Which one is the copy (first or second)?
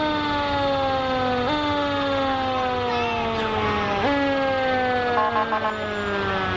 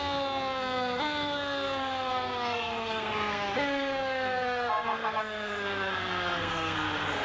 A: second